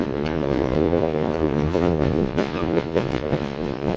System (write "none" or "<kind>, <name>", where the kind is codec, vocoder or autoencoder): vocoder, Vocos